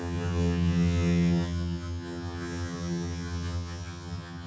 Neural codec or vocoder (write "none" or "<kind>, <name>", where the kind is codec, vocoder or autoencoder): vocoder, HiFi-GAN